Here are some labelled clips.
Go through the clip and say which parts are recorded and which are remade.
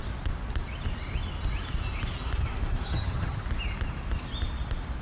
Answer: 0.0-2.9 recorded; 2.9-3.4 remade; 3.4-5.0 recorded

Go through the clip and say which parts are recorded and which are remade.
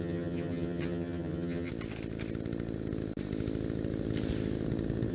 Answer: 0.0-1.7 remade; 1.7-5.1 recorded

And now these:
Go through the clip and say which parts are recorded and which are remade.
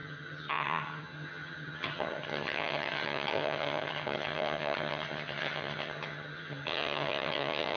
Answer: 0.0-7.8 remade